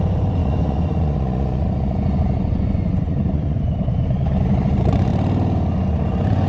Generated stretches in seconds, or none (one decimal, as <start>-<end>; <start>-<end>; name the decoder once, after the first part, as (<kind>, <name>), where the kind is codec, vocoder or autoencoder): 0.0-5.1 (vocoder, Vocos); 5.8-6.5